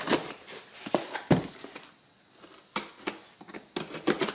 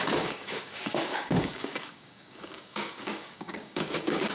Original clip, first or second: first